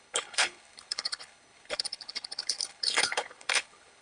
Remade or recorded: remade